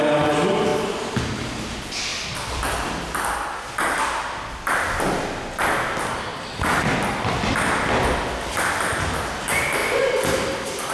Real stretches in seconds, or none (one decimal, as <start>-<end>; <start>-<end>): 0.0-2.1; 5.2-6.3; 7.6-9.8